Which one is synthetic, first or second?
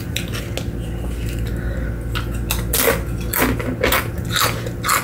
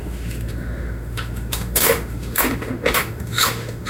second